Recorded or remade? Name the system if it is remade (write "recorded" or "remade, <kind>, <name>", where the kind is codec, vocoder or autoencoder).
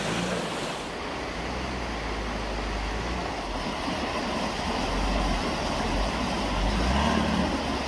recorded